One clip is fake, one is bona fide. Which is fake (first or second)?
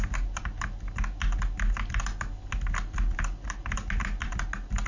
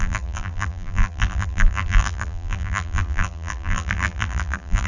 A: second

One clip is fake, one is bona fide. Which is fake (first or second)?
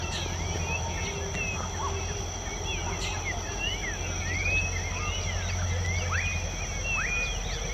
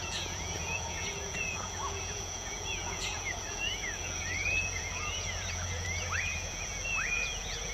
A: second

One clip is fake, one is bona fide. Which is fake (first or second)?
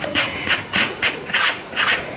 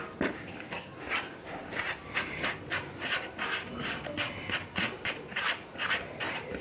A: first